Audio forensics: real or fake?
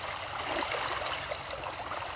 real